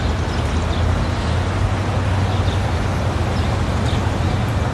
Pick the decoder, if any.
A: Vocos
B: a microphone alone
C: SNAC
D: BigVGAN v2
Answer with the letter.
B